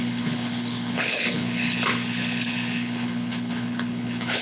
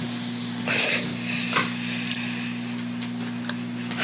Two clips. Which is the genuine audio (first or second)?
second